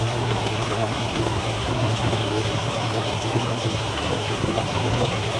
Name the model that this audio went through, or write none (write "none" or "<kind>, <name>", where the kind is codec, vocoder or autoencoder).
codec, SNAC